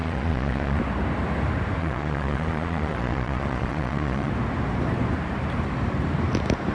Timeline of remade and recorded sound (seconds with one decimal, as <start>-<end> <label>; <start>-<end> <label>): 0.0-0.8 remade; 0.8-1.8 recorded; 1.8-4.3 remade; 4.3-6.7 recorded

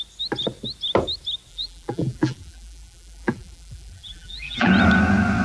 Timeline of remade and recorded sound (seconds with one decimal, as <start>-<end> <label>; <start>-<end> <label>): 0.0-1.5 recorded; 1.5-4.7 remade; 4.7-5.4 recorded

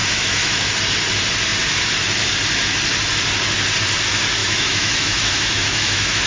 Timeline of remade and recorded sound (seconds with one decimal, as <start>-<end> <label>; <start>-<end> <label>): 0.0-0.7 remade; 0.7-4.4 recorded; 4.4-6.3 remade

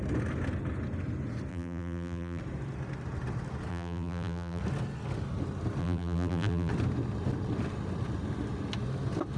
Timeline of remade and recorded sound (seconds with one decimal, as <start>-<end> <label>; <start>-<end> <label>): 0.0-1.5 recorded; 1.5-2.4 remade; 2.4-3.7 recorded; 3.7-4.6 remade; 4.6-5.8 recorded; 5.8-6.7 remade; 6.7-9.4 recorded

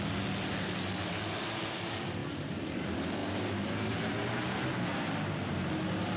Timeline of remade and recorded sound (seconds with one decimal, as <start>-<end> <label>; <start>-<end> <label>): 0.0-6.2 recorded